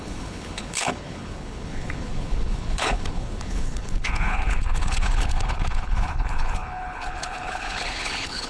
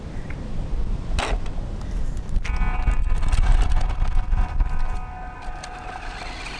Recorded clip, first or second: second